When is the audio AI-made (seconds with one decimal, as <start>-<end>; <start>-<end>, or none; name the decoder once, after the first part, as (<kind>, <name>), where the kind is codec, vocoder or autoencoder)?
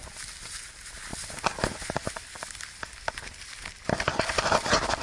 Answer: none